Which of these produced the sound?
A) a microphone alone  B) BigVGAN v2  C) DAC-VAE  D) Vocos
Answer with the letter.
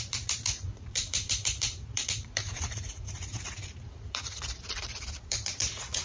D